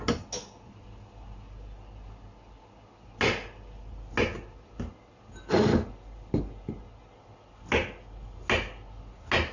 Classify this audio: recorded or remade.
recorded